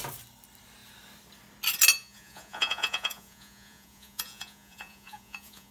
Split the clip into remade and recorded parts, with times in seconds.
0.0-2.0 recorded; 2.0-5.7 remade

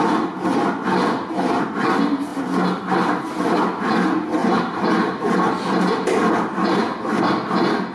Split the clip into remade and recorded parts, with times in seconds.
0.0-7.9 recorded

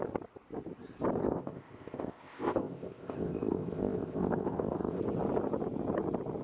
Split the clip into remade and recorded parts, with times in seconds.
0.0-1.2 recorded; 1.2-5.0 remade; 5.0-6.4 recorded